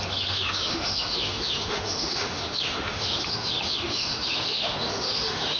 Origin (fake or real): fake